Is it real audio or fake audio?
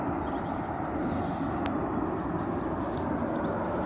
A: real